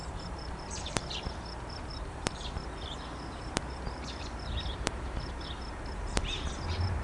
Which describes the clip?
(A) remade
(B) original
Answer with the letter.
A